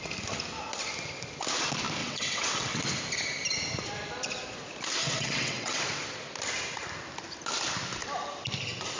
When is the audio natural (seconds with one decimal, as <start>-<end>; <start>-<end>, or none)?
0.0-2.0; 2.8-5.0; 5.8-9.0